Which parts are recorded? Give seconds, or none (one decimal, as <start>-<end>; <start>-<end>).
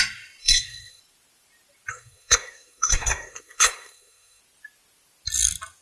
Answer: 0.0-0.4; 1.0-1.9; 4.4-5.8